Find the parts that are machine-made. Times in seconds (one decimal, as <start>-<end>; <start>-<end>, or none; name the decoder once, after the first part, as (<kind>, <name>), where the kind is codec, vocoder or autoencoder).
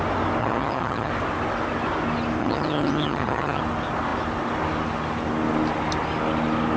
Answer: 0.4-1.1 (vocoder, HiFi-GAN); 2.4-3.6